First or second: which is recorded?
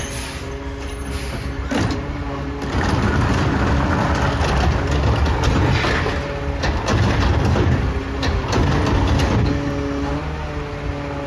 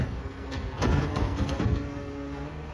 first